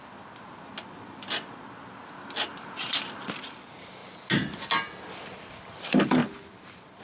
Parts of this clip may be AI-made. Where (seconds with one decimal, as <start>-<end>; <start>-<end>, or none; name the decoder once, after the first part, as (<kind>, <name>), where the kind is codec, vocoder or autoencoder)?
0.0-4.0 (vocoder, BigVGAN v2); 5.4-6.2